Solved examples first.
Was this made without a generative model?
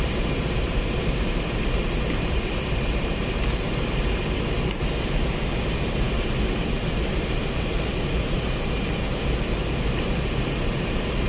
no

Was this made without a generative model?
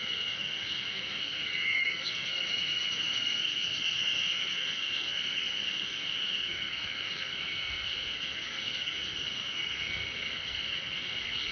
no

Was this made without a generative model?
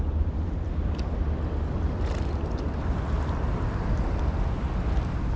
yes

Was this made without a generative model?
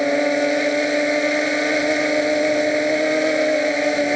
yes